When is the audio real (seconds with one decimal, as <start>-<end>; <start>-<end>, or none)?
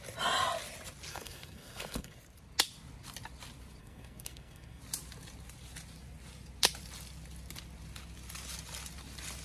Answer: 0.0-1.1; 2.2-3.8; 4.8-9.4